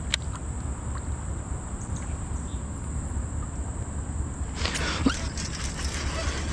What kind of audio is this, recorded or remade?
recorded